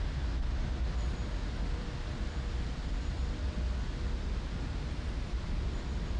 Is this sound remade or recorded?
recorded